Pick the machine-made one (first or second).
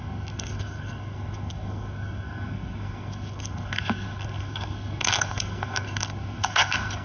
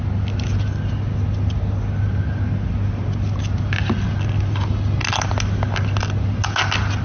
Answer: first